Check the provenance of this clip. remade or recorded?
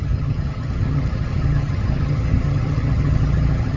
remade